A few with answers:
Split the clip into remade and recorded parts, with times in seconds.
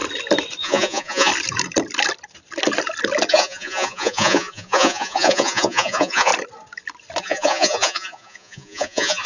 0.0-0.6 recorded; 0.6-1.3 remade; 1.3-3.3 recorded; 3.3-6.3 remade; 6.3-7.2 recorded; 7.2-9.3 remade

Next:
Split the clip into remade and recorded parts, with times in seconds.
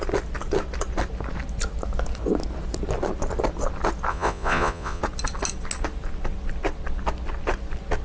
0.0-4.1 recorded; 4.1-5.0 remade; 5.0-8.0 recorded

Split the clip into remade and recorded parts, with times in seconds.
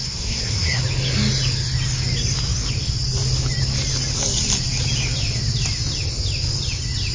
0.0-0.8 remade; 0.8-7.1 recorded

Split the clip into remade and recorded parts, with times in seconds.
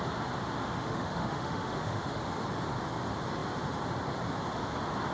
0.0-0.6 recorded; 0.6-2.2 remade; 2.2-5.1 recorded